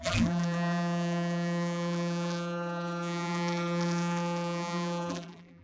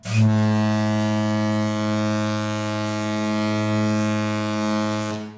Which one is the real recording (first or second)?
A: second